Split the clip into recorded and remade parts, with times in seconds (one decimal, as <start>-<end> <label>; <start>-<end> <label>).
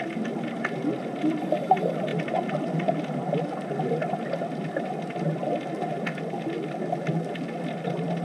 0.0-8.2 recorded